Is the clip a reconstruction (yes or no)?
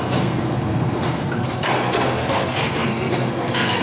yes